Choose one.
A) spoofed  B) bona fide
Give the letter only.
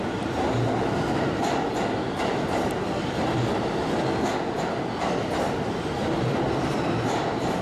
B